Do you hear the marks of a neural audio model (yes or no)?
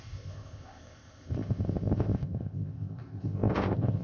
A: yes